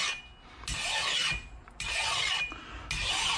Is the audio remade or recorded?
recorded